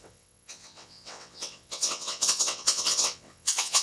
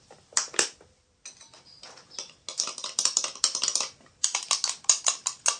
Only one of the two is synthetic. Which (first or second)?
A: first